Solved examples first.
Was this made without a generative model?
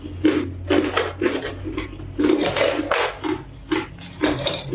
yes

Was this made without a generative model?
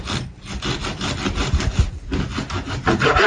yes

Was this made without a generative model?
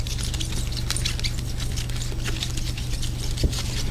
yes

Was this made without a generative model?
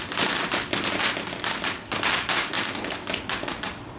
yes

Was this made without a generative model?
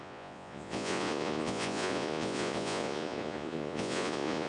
no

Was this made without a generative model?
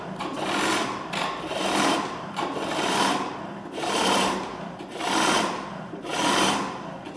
no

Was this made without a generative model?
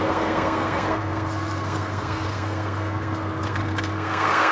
no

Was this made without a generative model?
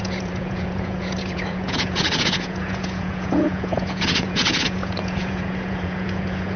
no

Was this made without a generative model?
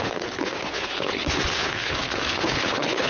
no